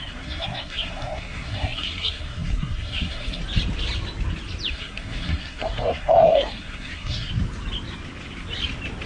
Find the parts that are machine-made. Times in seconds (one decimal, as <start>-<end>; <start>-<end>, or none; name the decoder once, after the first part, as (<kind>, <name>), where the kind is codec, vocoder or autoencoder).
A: 0.0-3.4 (codec, SNAC); 4.7-7.3